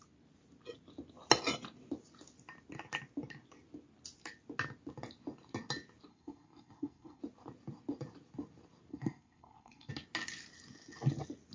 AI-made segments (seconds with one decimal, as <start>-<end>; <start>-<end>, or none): 6.1-7.2; 8.9-9.9